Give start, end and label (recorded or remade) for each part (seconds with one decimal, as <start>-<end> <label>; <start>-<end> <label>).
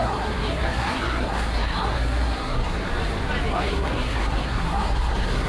0.0-2.9 remade; 2.9-3.5 recorded; 3.5-5.5 remade